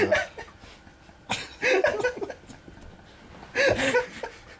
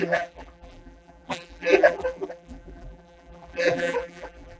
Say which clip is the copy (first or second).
second